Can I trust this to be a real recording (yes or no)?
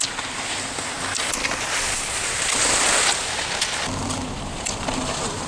yes